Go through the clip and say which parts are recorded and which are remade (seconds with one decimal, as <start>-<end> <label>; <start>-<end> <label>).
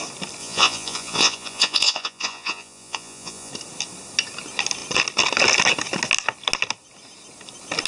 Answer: 0.0-0.4 recorded; 0.4-3.5 remade; 3.5-7.9 recorded